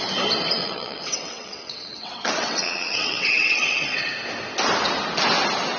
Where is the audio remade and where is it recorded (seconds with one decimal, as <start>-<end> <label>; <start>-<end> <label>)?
0.0-0.6 recorded; 0.6-4.1 remade; 4.1-5.8 recorded